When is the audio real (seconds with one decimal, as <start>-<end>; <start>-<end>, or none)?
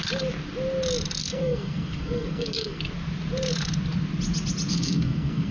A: 0.0-1.2; 2.8-4.7